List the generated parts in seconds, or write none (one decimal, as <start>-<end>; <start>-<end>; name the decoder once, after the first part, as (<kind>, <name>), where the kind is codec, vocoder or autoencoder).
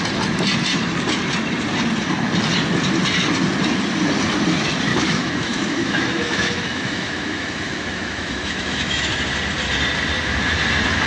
4.9-9.1 (autoencoder, DAC-VAE)